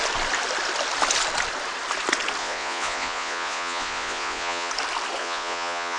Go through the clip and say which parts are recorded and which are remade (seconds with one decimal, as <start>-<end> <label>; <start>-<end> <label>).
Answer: 0.0-2.4 recorded; 2.4-4.7 remade; 4.7-5.2 recorded; 5.2-6.0 remade